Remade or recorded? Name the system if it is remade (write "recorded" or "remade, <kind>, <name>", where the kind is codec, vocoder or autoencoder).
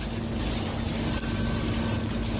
recorded